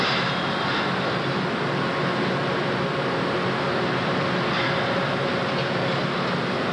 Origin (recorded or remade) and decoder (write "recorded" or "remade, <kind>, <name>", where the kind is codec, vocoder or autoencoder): recorded